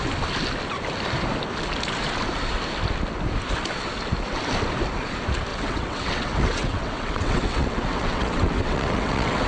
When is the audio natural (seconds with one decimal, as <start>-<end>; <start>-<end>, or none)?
0.0-5.5